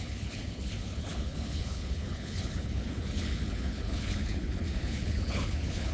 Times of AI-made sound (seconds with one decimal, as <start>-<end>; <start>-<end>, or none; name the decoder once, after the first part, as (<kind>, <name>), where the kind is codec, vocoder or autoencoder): 0.0-5.9 (codec, HILCodec)